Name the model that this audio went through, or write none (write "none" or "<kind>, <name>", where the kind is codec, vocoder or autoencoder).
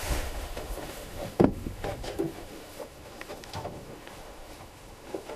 autoencoder, DAC-VAE